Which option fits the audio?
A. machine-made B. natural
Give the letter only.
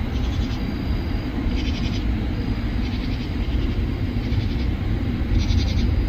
B